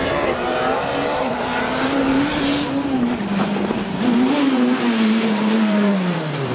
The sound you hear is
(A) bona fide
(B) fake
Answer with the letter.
B